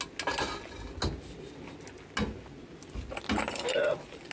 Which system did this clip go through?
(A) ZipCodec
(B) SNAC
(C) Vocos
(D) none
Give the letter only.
D